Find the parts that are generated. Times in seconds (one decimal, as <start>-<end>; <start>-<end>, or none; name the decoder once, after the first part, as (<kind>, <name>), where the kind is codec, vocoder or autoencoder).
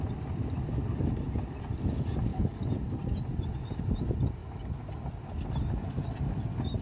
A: 2.3-3.3 (vocoder, BigVGAN v2)